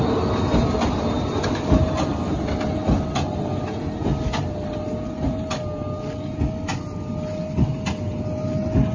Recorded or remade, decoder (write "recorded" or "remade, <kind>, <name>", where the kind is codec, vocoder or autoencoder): recorded